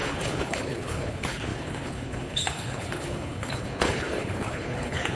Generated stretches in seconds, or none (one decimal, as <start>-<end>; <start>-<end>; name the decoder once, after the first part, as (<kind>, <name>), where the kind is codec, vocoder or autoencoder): 0.0-5.1 (codec, HILCodec)